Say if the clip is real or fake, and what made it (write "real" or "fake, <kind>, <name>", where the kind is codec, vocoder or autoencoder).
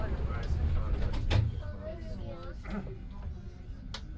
real